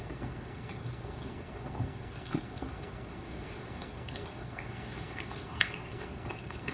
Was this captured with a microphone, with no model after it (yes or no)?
no